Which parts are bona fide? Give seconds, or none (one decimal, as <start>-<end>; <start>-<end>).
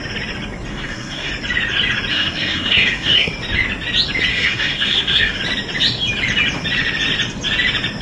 0.0-0.7; 1.3-2.1; 3.3-4.3; 5.4-8.0